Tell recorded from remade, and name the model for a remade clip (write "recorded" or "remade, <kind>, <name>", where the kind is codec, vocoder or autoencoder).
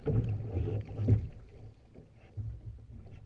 recorded